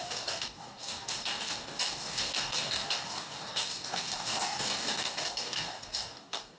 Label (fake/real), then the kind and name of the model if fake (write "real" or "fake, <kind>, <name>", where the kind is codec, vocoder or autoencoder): fake, codec, DAC